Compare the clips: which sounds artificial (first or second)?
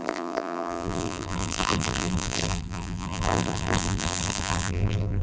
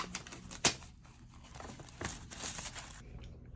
first